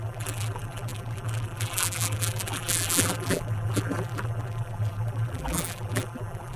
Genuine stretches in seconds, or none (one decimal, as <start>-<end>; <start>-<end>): none